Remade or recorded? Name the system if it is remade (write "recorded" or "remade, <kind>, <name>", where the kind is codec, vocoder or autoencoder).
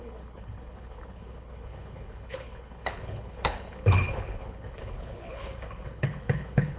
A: remade, codec, HILCodec